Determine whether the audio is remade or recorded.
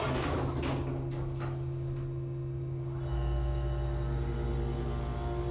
recorded